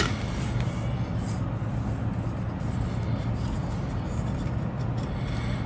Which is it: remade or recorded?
recorded